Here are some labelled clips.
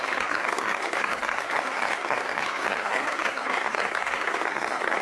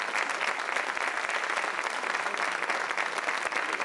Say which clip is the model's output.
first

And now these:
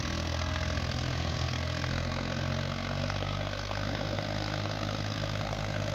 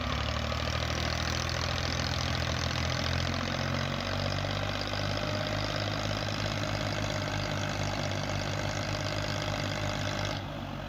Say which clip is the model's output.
first